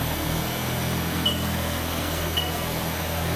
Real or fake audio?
fake